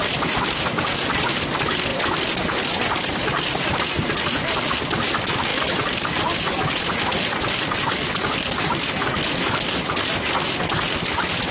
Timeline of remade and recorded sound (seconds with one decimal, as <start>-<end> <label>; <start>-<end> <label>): 0.0-11.5 recorded